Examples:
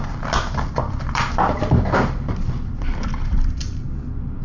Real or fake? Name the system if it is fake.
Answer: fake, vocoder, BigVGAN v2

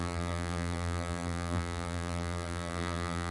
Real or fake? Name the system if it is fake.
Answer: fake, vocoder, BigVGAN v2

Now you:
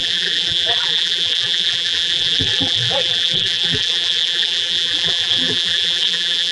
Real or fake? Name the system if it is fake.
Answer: fake, vocoder, BigVGAN v2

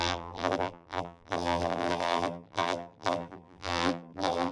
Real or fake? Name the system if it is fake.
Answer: fake, vocoder, BigVGAN v2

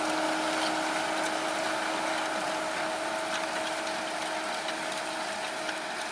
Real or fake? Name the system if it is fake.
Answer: real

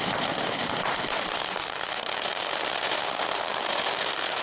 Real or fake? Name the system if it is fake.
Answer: fake, vocoder, BigVGAN v2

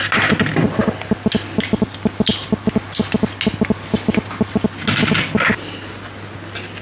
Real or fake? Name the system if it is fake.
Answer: real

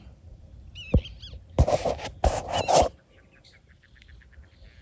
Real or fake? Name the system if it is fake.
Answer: real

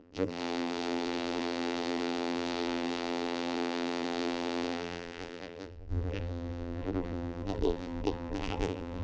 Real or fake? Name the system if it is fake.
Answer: fake, vocoder, BigVGAN v2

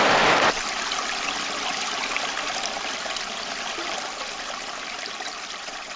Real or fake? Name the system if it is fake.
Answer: real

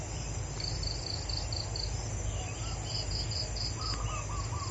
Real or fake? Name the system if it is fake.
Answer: real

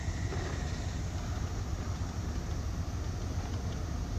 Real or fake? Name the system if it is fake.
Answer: real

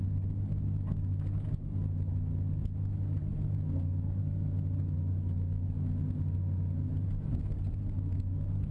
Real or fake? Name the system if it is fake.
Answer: real